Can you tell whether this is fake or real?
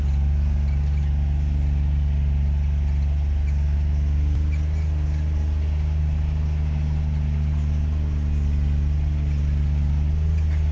real